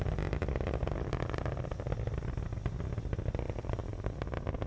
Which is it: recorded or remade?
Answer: recorded